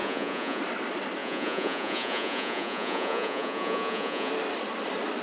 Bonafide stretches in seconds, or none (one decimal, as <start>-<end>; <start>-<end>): 0.6-1.2; 4.3-5.2